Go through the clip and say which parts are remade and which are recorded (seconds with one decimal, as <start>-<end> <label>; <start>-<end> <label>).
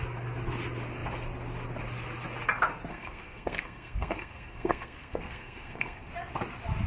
0.0-2.9 recorded; 2.9-6.1 remade; 6.1-6.9 recorded